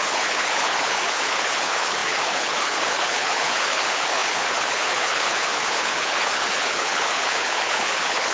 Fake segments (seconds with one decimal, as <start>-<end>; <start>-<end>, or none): 0.0-8.3